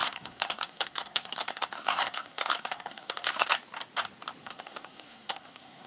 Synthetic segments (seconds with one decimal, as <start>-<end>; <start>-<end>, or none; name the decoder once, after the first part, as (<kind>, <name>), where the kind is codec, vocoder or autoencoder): 0.0-3.5 (codec, SNAC); 4.4-5.9